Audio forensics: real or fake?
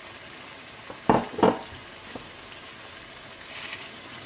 real